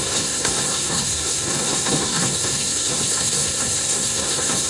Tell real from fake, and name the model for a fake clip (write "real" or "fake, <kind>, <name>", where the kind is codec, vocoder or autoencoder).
fake, codec, SNAC